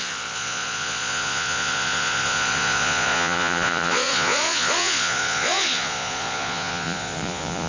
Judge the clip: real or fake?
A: fake